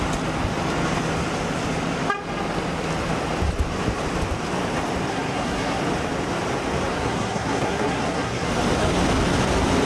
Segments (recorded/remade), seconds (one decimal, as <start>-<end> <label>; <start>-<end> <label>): 0.0-5.1 recorded; 5.1-5.8 remade; 5.8-6.9 recorded; 6.9-8.5 remade; 8.5-9.9 recorded